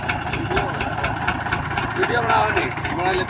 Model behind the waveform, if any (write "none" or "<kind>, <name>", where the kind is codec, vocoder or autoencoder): none